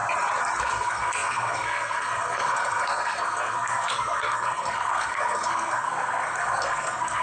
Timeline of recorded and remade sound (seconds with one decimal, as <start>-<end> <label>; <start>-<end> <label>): 0.0-0.6 recorded; 0.6-7.2 remade